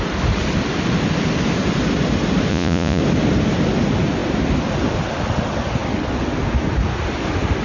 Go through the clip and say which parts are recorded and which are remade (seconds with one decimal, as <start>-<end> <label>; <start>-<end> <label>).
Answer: 0.0-2.5 recorded; 2.5-3.0 remade; 3.0-7.6 recorded